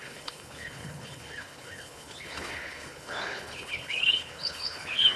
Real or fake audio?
fake